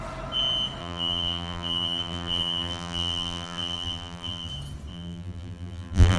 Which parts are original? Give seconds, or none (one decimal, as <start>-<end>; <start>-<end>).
0.0-0.8; 4.5-4.9